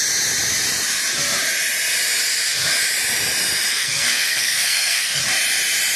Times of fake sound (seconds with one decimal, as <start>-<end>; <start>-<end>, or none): 3.7-5.2